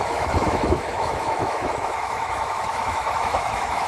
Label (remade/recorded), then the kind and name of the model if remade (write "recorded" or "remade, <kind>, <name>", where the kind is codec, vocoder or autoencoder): remade, autoencoder, DAC-VAE